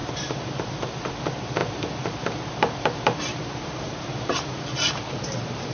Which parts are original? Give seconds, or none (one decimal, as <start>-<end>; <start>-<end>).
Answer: none